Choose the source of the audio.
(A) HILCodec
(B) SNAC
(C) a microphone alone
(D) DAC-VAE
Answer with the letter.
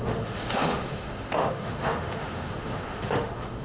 D